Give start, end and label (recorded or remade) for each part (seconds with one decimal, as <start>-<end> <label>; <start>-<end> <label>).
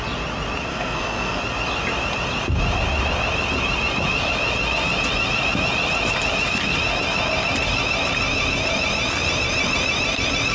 0.0-0.7 recorded; 0.7-1.4 remade; 1.4-10.5 recorded